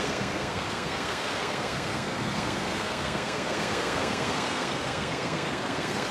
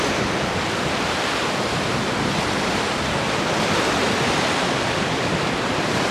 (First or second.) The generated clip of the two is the first